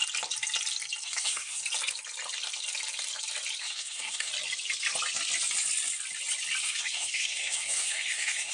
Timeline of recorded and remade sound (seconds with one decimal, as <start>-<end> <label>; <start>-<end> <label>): 0.0-1.0 recorded; 1.0-1.6 remade; 1.6-3.6 recorded; 3.6-4.3 remade; 4.3-6.6 recorded; 6.6-8.5 remade